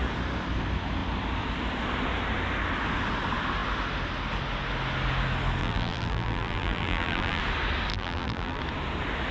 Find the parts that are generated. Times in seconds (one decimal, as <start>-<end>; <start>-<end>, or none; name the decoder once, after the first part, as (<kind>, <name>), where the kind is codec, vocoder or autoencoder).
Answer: 5.6-7.4 (vocoder, BigVGAN v2); 7.9-8.6